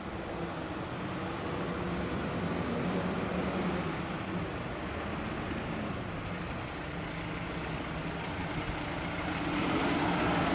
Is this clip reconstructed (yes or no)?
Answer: no